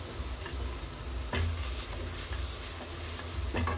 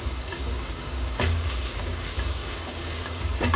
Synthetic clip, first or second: second